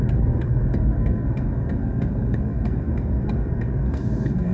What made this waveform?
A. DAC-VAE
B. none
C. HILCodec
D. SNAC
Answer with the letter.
D